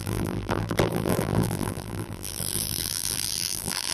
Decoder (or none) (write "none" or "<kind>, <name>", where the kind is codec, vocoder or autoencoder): vocoder, BigVGAN v2